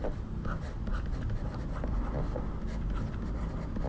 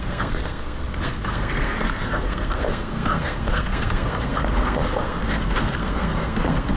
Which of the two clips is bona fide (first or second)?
first